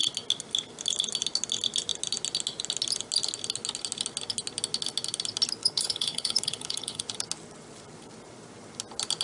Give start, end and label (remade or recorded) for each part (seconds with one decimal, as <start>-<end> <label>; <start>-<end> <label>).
0.0-5.6 recorded; 5.6-7.0 remade; 7.0-9.2 recorded